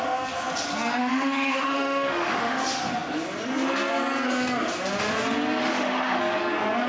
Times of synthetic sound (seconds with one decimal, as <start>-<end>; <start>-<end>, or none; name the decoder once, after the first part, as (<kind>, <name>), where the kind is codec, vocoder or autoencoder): 1.0-2.6 (autoencoder, DAC-VAE); 5.6-6.2